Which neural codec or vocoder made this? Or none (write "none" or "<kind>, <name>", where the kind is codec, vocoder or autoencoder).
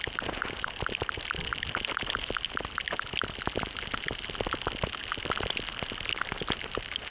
none